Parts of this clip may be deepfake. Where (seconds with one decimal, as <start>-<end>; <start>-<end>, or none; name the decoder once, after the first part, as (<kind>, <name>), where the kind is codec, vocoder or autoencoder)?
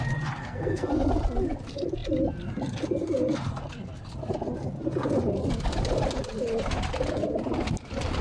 0.4-0.9 (codec, SNAC)